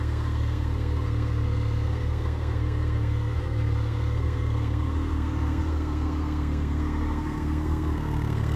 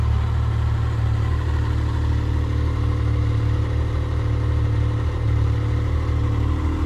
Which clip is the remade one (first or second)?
first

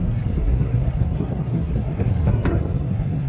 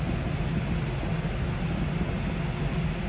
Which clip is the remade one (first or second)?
first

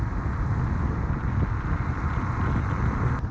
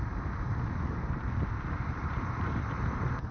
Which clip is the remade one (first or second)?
second